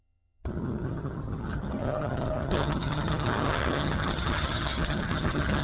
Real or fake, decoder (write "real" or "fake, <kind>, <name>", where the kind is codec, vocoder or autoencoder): fake, vocoder, HiFi-GAN